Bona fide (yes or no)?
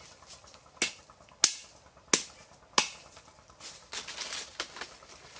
yes